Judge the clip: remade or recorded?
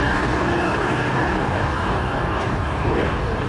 remade